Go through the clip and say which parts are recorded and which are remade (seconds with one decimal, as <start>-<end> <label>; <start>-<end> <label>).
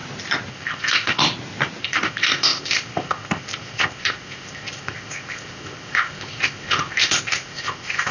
0.0-0.5 recorded; 0.5-1.2 remade; 1.2-1.8 recorded; 1.8-8.1 remade